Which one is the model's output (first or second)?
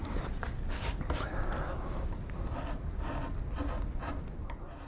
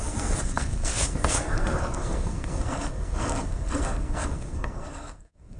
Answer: second